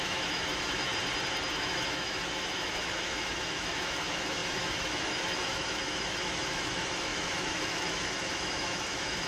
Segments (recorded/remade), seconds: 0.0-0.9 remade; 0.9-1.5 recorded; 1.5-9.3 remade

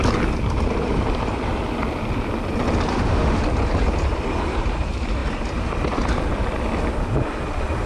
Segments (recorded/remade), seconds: 0.0-2.9 recorded; 2.9-3.4 remade; 3.4-7.9 recorded

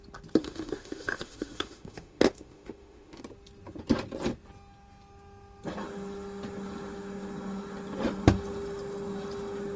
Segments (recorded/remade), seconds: 0.0-0.4 recorded; 0.4-3.2 remade; 3.2-9.8 recorded

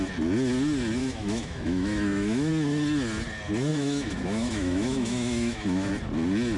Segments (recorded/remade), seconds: 0.0-1.0 recorded; 1.0-2.5 remade; 2.5-3.7 recorded; 3.7-5.9 remade; 5.9-6.6 recorded